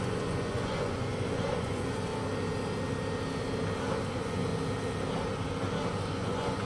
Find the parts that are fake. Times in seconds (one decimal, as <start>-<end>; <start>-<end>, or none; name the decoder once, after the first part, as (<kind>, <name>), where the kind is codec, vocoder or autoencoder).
0.0-2.1 (vocoder, Vocos); 4.1-4.5; 6.1-6.6